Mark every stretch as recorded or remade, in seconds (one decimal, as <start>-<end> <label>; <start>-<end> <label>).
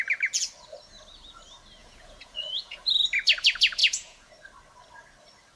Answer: 0.0-1.8 recorded; 1.8-2.9 remade; 2.9-3.8 recorded; 3.8-4.3 remade; 4.3-5.6 recorded